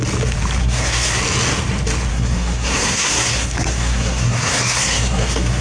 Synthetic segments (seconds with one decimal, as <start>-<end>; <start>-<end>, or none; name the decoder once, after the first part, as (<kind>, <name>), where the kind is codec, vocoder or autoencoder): 0.6-1.2 (codec, SNAC); 2.1-5.6